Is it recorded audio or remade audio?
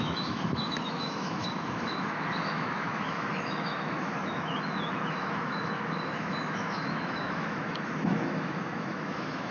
remade